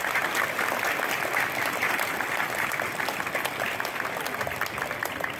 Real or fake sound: fake